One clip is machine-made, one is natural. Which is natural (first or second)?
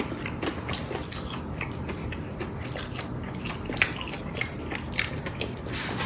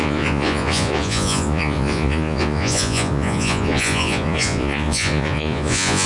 first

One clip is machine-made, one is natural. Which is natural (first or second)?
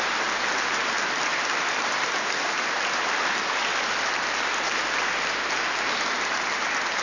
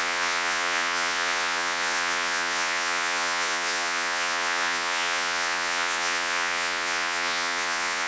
first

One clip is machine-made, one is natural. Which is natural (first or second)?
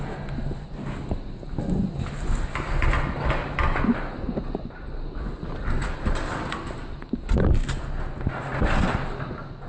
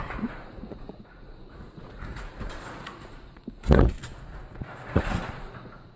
first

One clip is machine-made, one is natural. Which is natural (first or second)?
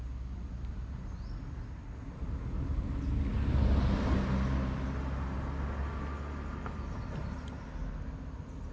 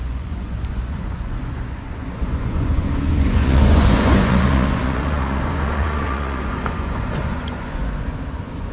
first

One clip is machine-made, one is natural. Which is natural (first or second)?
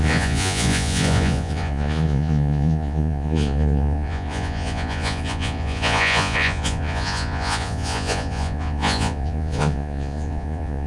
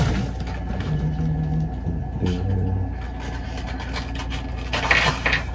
second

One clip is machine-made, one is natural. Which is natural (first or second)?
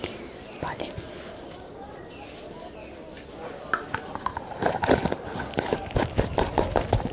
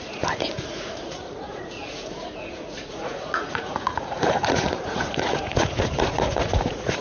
first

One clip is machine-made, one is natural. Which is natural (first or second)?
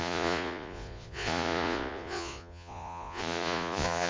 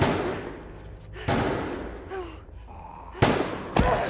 second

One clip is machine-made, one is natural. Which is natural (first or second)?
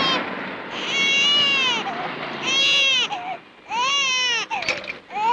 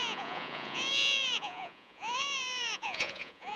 first